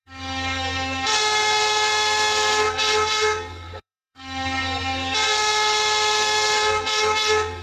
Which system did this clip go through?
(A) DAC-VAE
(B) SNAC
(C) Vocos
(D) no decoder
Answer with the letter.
B